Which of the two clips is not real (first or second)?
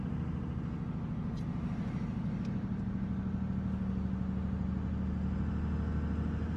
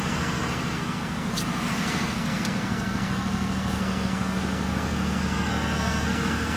second